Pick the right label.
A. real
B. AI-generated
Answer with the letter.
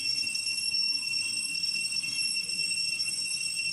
B